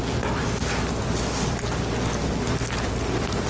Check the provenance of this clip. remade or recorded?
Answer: recorded